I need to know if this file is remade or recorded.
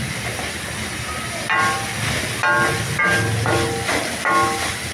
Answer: recorded